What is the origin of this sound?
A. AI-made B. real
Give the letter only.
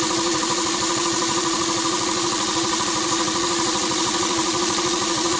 A